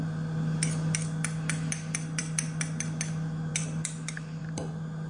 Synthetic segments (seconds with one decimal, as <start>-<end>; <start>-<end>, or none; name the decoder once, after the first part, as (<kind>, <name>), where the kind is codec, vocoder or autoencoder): none